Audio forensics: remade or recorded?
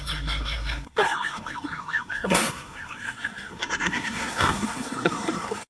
remade